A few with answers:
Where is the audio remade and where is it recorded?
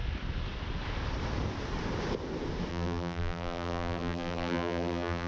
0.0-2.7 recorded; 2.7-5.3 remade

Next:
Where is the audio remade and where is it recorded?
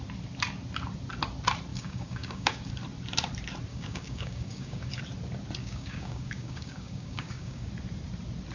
0.0-1.7 recorded; 1.7-2.7 remade; 2.7-3.7 recorded; 3.7-5.0 remade; 5.0-5.6 recorded; 5.6-7.7 remade; 7.7-8.5 recorded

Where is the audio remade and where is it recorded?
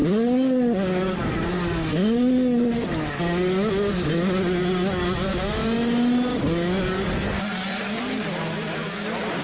0.0-6.3 recorded; 6.3-7.1 remade; 7.1-9.4 recorded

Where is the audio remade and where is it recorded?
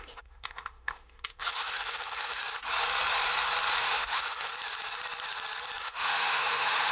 0.0-2.4 remade; 2.4-3.8 recorded; 3.8-4.5 remade; 4.5-5.8 recorded; 5.8-6.9 remade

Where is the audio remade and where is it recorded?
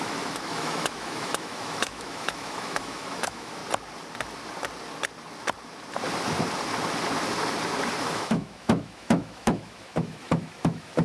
0.0-3.6 remade; 3.6-8.0 recorded; 8.0-11.0 remade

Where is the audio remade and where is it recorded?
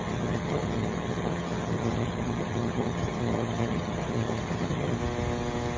0.0-5.0 remade; 5.0-5.8 recorded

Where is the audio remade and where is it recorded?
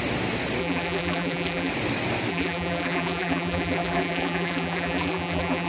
0.0-0.6 recorded; 0.6-1.7 remade; 1.7-2.3 recorded; 2.3-5.7 remade